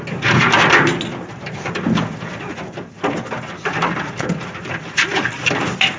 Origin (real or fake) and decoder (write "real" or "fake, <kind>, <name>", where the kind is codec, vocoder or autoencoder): real